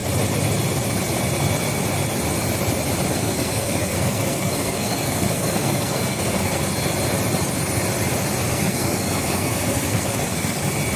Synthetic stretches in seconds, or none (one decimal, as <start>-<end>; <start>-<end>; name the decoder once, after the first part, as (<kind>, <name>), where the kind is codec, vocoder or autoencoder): 3.1-6.6 (codec, SNAC); 8.5-10.6